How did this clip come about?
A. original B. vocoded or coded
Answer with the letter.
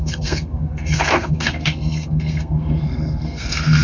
B